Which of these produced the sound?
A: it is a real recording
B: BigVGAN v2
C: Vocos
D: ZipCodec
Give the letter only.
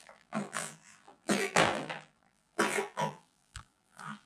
B